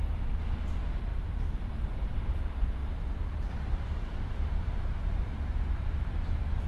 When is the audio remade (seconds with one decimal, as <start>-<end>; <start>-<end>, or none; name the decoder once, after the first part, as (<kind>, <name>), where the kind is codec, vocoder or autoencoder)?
1.1-1.7 (vocoder, BigVGAN v2); 2.8-6.7